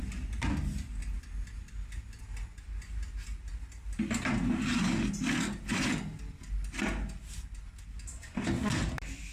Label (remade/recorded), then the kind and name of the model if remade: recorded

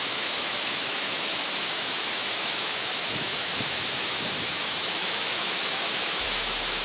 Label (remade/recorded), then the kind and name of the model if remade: remade, autoencoder, DAC-VAE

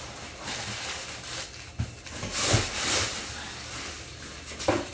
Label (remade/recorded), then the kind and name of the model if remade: recorded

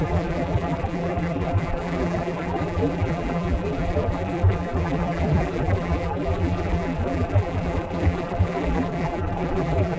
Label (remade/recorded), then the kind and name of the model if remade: remade, vocoder, BigVGAN v2